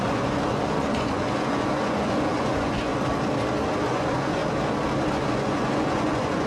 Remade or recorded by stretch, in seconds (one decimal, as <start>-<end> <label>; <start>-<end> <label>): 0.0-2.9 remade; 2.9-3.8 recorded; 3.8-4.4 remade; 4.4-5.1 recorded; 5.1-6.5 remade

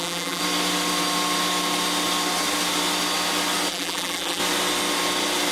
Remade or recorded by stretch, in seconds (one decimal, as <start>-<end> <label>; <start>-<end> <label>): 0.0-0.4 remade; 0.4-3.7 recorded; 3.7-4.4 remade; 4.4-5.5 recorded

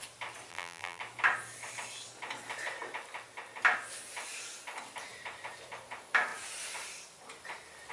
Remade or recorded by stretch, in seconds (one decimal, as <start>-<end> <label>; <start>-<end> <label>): 0.0-0.5 recorded; 0.5-1.0 remade; 1.0-7.9 recorded

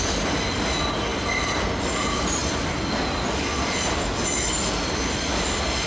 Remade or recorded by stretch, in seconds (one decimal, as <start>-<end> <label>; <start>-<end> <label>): 0.0-5.9 recorded